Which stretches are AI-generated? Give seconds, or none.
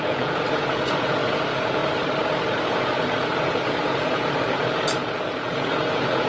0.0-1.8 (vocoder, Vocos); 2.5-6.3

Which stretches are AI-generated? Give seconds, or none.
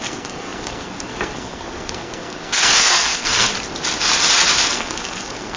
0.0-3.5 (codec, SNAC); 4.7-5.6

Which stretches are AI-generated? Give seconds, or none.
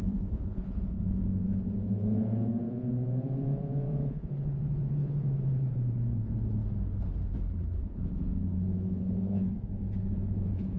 0.0-6.6 (vocoder, Vocos); 7.8-10.8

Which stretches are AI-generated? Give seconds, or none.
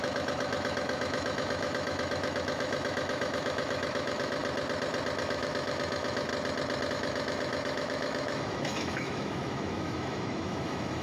0.0-4.4 (autoencoder, DAC-VAE); 5.2-6.3; 6.9-11.0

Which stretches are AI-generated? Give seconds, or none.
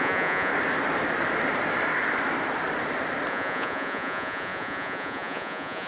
0.0-0.5 (vocoder, Vocos); 3.3-5.9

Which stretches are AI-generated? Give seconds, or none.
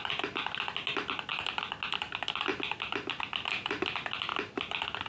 none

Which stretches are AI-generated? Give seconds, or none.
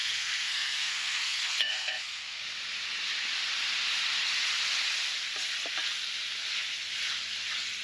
0.0-2.4 (codec, SNAC)